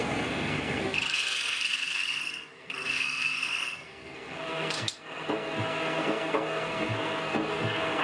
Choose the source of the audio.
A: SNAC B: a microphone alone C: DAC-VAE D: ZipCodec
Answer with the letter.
A